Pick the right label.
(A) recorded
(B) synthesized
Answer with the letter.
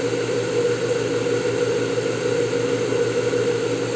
A